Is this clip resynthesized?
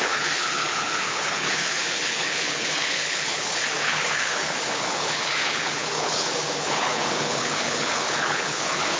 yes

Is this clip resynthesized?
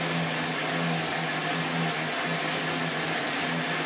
no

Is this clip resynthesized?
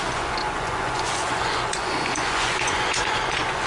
yes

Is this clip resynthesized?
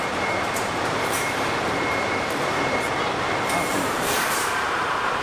yes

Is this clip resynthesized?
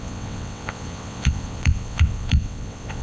yes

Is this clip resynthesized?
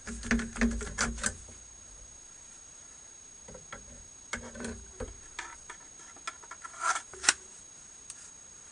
no